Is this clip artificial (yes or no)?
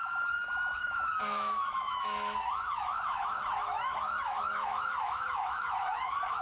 yes